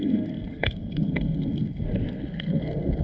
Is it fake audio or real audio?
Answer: fake